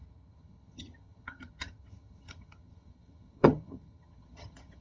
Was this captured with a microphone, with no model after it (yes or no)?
no